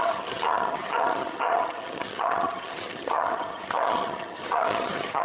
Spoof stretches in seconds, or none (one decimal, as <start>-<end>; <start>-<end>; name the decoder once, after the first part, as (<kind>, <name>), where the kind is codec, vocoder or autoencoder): 0.0-5.2 (vocoder, HiFi-GAN)

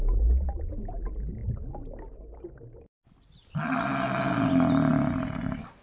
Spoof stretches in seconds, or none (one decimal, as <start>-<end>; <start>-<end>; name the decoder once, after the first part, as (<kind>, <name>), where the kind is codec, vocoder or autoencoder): none